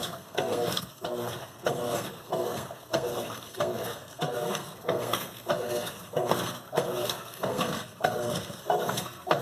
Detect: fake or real fake